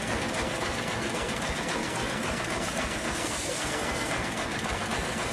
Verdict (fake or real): fake